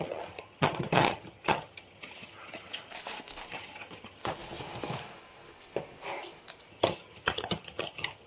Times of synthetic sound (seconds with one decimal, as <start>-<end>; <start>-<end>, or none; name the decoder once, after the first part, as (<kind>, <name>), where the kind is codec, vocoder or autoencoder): 0.0-2.9 (vocoder, HiFi-GAN); 3.5-4.2; 6.7-8.3